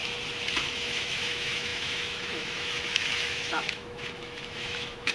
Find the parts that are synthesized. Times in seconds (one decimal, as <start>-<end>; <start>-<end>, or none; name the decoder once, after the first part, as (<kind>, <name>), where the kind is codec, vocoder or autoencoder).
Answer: 0.6-5.1 (autoencoder, DAC-VAE)